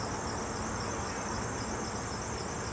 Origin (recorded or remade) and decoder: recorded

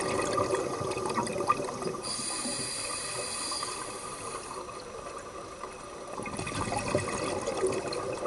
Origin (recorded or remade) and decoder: recorded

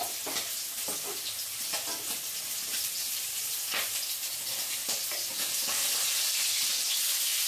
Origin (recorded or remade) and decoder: recorded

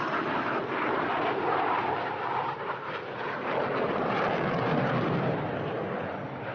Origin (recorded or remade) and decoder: recorded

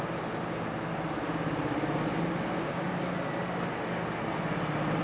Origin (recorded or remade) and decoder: recorded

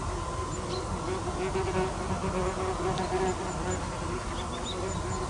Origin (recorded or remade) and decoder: recorded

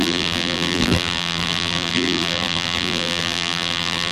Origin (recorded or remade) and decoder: remade, vocoder, BigVGAN v2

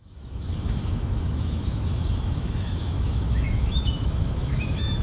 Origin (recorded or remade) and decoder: remade, autoencoder, DAC-VAE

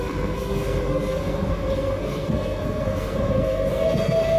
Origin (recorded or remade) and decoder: remade, codec, SNAC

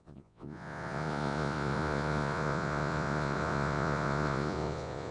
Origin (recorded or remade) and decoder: remade, vocoder, Vocos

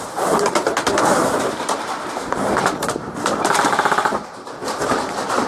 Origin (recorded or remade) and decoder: remade, vocoder, BigVGAN v2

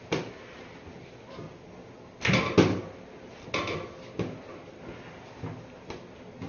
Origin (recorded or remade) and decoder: recorded